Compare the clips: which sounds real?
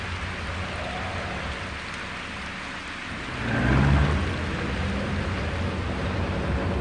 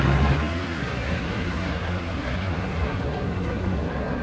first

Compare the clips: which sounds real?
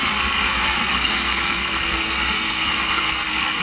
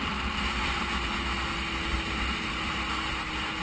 second